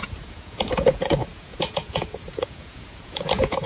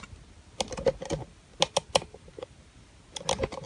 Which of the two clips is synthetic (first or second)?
first